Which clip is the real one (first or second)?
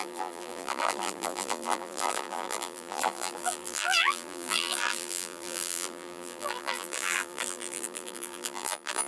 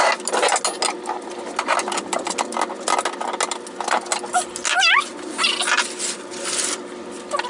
second